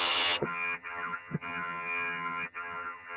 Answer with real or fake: fake